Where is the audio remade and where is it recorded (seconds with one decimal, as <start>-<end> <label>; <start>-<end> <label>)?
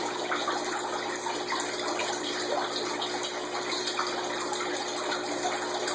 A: 0.0-5.9 recorded